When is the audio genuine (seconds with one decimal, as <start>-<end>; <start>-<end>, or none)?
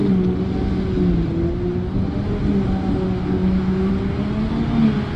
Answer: 0.0-3.4; 3.9-5.2